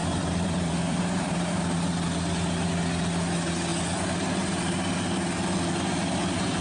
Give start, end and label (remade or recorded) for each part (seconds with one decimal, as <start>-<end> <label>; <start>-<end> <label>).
0.0-1.6 remade; 1.6-6.6 recorded